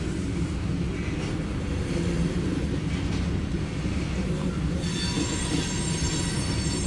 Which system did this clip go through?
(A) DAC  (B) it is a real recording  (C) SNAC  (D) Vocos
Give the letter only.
B